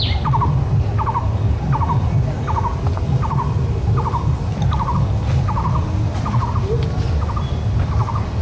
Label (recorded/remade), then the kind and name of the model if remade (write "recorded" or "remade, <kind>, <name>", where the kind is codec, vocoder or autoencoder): recorded